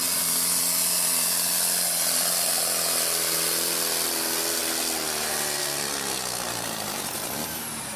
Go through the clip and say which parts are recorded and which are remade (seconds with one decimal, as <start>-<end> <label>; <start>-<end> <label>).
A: 0.0-8.0 recorded

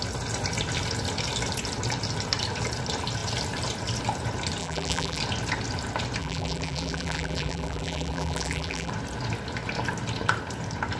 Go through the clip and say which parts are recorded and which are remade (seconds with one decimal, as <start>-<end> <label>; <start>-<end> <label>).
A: 0.0-4.6 recorded; 4.6-5.2 remade; 5.2-6.2 recorded; 6.2-8.9 remade; 8.9-11.0 recorded

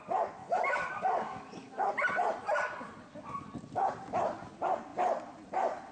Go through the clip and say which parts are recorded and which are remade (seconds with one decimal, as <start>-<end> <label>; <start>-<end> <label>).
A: 0.0-0.4 recorded; 0.4-1.9 remade; 1.9-5.9 recorded

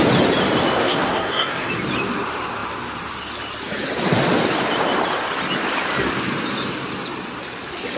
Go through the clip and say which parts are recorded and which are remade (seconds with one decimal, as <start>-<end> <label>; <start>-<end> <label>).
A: 0.0-0.8 recorded; 0.8-1.7 remade; 1.7-8.0 recorded